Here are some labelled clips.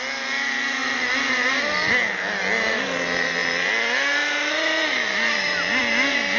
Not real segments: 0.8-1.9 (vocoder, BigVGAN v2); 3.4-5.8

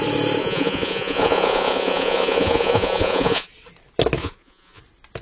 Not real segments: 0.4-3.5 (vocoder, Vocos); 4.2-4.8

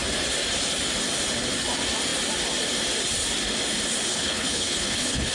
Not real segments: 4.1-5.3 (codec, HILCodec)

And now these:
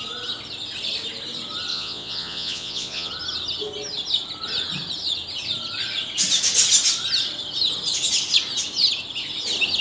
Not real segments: 1.7-3.1 (vocoder, Vocos)

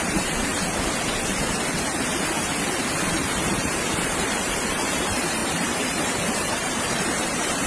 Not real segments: 0.0-0.5 (vocoder, BigVGAN v2); 3.1-7.7